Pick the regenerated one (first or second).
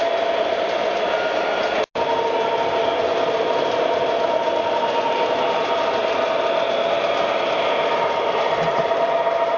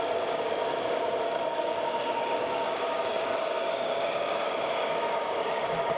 second